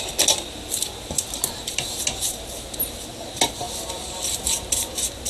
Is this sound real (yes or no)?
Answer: yes